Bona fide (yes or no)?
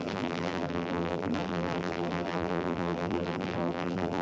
no